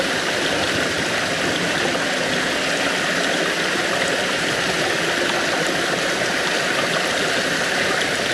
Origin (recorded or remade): recorded